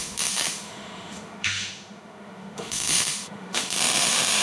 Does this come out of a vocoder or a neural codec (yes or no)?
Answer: yes